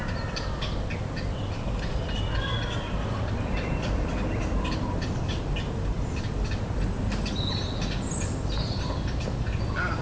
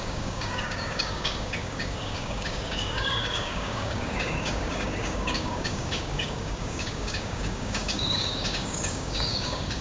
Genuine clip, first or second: first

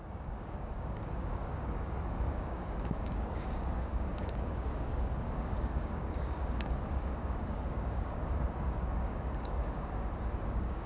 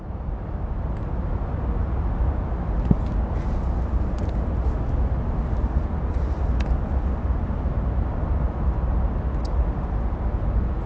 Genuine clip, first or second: second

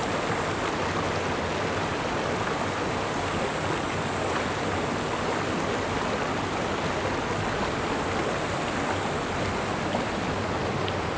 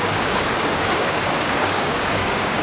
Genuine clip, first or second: first